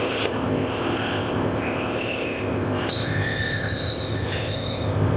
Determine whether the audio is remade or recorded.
remade